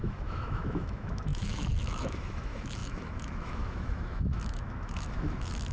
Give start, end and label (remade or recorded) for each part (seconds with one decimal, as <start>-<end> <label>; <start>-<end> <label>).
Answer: 0.0-5.7 remade